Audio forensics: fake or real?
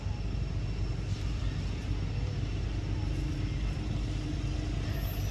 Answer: real